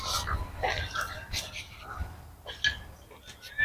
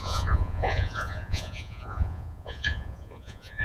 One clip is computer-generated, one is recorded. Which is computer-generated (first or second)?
second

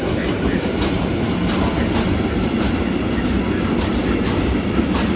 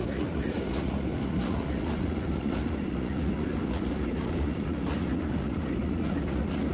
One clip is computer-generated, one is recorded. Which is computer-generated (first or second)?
second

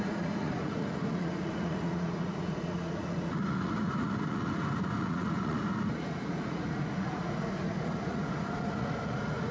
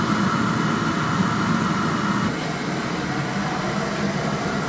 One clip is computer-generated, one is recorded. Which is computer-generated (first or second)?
first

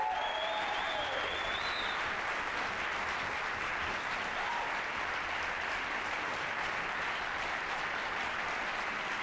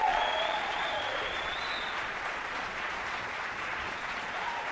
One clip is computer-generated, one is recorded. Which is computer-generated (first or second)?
second